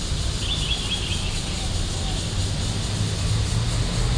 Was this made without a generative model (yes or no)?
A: yes